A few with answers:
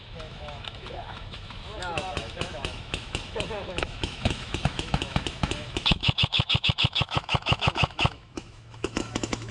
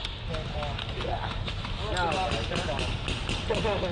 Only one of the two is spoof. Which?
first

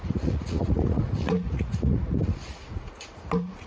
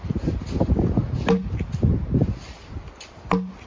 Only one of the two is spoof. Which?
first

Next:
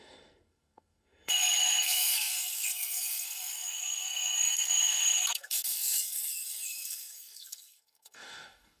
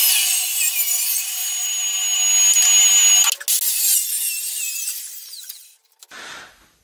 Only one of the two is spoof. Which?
first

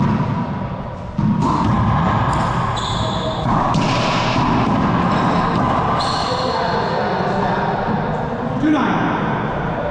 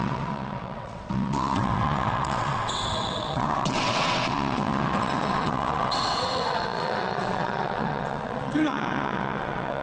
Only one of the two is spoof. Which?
second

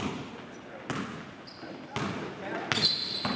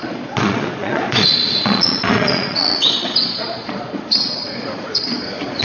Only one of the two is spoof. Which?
second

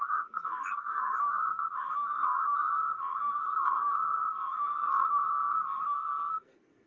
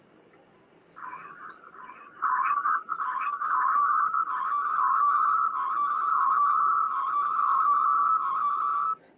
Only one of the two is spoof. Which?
first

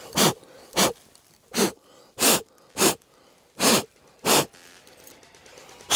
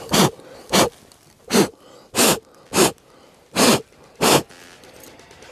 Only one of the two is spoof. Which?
first